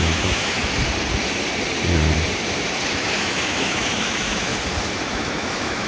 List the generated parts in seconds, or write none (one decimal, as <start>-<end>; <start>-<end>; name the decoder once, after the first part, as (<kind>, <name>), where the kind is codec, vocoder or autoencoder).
0.0-0.6 (autoencoder, DAC-VAE); 2.8-4.5; 5.1-5.9